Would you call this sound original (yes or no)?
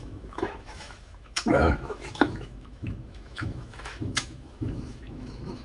no